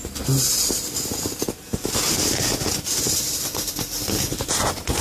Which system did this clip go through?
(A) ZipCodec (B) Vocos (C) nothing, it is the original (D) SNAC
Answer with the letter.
C